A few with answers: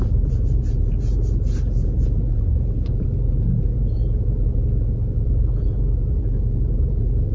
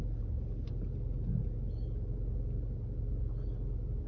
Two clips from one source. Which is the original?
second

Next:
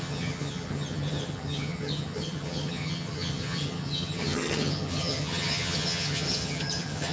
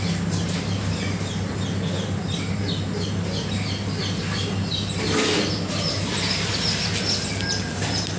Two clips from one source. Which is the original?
second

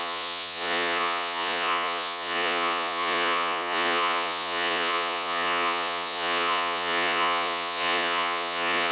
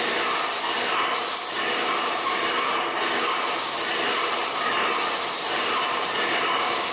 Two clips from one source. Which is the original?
second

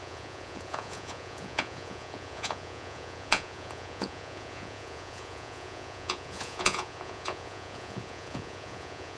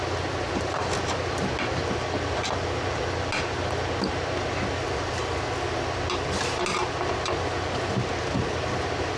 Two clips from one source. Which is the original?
second